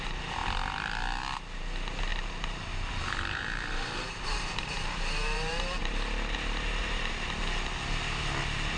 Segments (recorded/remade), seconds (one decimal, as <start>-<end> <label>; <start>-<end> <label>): 0.0-2.1 recorded; 2.1-5.8 remade; 5.8-8.8 recorded